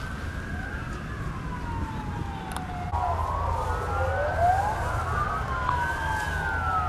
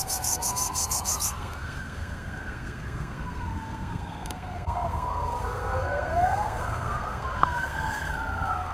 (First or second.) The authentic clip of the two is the first